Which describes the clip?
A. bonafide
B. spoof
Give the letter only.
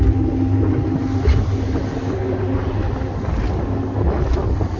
A